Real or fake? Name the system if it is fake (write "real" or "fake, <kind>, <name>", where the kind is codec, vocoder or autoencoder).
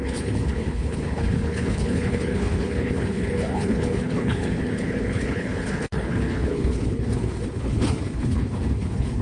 fake, codec, HILCodec